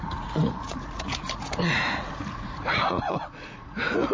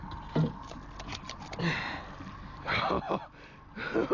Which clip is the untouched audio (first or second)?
second